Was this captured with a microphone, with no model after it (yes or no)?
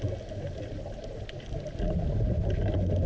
yes